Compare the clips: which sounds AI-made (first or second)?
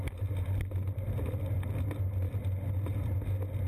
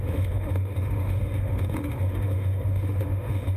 second